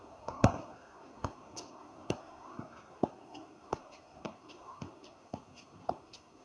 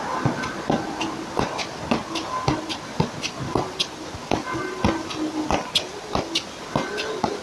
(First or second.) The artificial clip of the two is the first